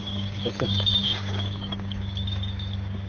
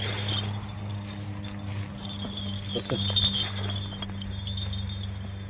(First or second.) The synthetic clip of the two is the first